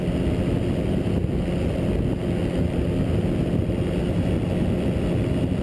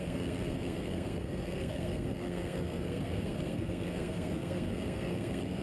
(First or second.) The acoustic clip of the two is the first